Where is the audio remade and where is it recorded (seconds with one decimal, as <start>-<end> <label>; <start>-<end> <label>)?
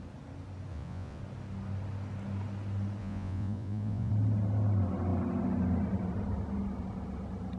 0.0-0.7 recorded; 0.7-1.2 remade; 1.2-3.0 recorded; 3.0-4.1 remade; 4.1-7.6 recorded